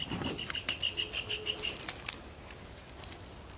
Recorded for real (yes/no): yes